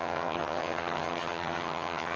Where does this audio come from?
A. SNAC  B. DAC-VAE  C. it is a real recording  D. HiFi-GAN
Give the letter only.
D